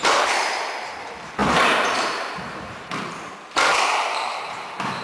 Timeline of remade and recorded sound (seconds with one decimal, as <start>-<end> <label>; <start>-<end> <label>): 0.0-5.0 remade